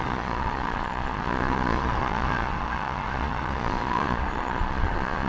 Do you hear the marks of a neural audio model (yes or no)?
yes